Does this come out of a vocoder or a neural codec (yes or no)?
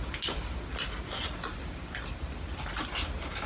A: no